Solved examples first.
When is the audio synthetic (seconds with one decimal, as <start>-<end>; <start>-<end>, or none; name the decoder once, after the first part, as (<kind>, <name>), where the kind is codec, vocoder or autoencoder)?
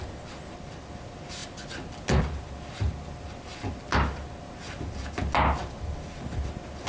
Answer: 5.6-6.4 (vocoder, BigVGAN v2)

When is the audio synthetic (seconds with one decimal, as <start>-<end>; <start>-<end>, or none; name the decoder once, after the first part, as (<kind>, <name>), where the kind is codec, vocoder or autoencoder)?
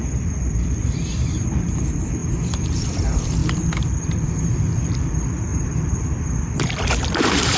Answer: 0.0-2.2 (vocoder, BigVGAN v2); 2.8-5.5; 6.3-7.6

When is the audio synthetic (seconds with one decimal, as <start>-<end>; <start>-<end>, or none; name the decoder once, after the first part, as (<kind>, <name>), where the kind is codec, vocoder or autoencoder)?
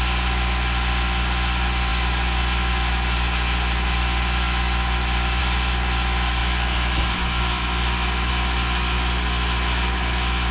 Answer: none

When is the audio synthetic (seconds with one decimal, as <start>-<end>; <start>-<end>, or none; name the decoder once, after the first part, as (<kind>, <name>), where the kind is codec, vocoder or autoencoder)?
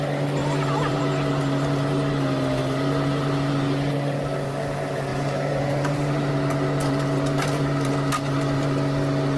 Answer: 0.4-1.0 (vocoder, BigVGAN v2); 5.1-6.3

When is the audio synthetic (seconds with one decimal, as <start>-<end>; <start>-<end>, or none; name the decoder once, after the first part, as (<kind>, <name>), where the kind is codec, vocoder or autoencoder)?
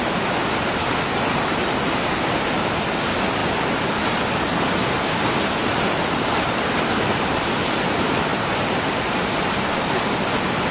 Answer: 5.6-7.4 (vocoder, BigVGAN v2); 8.3-9.8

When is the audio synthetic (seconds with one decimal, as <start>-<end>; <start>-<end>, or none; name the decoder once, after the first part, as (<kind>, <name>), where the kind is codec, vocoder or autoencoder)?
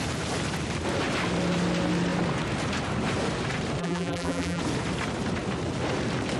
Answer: 3.8-4.6 (vocoder, BigVGAN v2)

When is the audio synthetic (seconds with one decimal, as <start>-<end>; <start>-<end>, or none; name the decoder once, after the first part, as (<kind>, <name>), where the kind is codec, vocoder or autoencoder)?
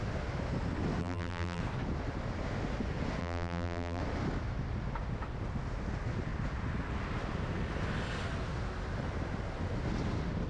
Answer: 1.0-1.6 (vocoder, BigVGAN v2); 3.2-4.0